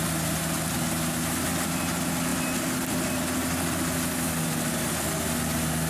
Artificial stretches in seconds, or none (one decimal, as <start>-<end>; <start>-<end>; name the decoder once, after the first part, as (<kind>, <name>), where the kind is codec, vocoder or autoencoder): none